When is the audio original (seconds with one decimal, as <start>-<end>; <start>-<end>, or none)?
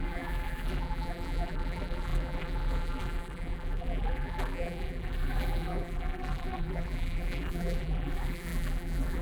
none